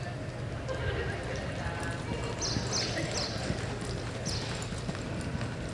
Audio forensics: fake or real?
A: real